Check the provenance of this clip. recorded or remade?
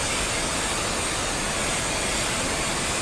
recorded